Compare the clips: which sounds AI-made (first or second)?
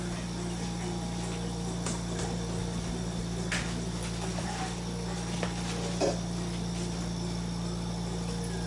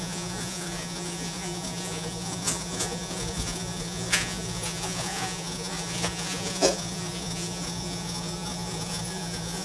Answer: second